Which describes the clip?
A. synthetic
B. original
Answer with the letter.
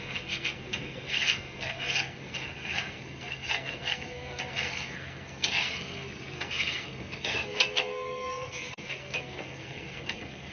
A